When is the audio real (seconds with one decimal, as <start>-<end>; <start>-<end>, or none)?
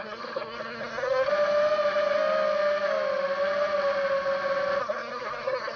1.3-4.8